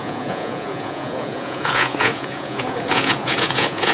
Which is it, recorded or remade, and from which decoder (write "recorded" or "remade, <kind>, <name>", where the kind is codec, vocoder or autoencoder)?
remade, vocoder, Vocos